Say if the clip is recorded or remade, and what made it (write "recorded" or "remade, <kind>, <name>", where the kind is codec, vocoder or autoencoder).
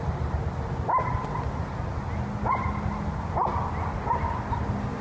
recorded